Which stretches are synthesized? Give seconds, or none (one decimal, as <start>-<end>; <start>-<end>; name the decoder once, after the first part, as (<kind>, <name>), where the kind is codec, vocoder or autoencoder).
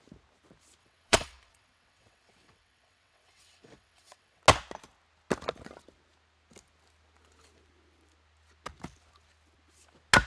0.8-4.4 (vocoder, WaveNeXt)